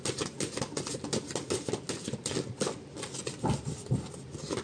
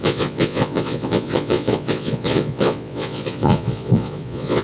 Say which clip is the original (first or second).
first